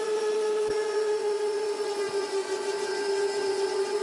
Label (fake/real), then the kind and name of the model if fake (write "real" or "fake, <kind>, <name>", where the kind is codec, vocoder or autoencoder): fake, vocoder, Vocos